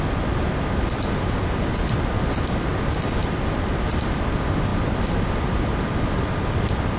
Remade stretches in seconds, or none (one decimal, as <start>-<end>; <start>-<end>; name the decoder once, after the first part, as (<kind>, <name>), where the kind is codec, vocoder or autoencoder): none